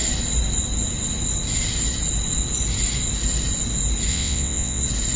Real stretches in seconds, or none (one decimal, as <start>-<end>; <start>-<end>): 0.0-4.1; 4.8-5.2